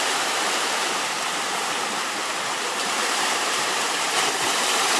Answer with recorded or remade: remade